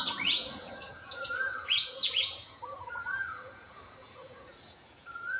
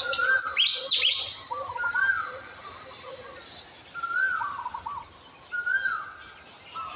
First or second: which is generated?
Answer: first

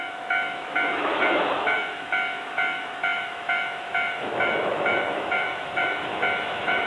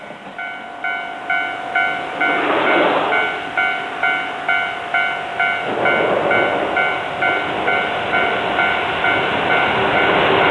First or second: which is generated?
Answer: first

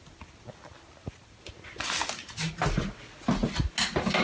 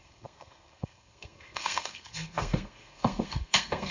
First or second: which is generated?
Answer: second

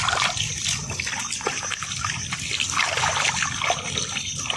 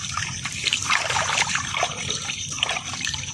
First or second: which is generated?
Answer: second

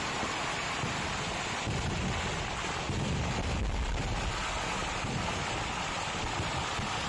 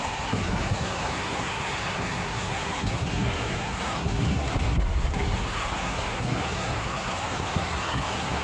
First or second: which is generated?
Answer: second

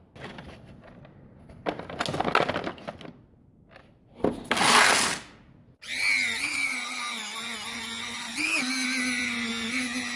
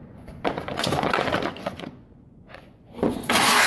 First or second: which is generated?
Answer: second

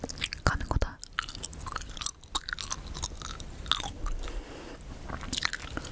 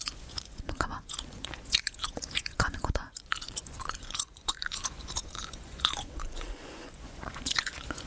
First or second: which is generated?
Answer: second